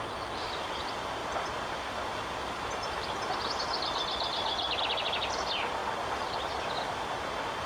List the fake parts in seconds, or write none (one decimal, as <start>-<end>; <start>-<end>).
none